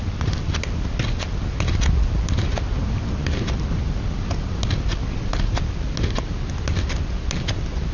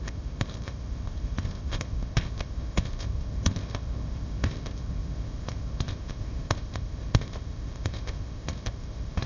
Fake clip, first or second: second